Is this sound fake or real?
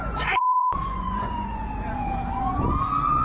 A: fake